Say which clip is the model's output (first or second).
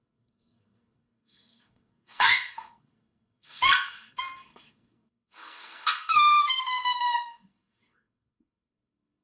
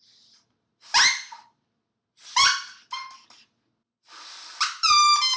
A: first